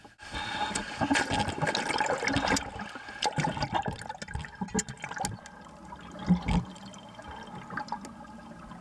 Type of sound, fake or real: real